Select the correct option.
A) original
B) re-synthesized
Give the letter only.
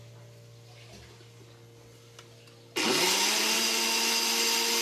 A